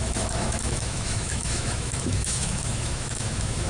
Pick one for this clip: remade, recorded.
remade